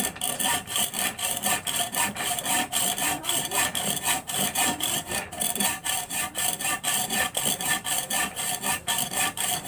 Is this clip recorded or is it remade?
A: remade